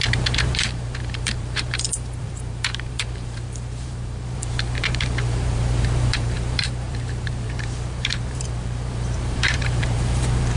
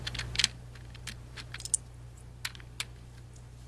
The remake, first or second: first